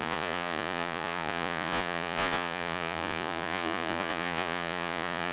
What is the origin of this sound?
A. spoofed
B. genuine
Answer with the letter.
A